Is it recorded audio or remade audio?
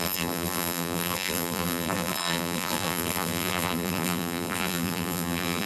remade